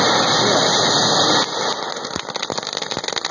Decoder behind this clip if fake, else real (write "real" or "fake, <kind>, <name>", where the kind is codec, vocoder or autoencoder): real